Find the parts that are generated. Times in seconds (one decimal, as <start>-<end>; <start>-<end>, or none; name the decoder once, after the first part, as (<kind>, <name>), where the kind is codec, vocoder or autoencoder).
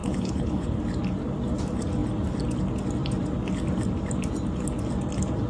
0.0-0.8 (codec, HILCodec)